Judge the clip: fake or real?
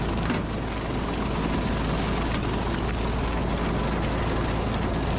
real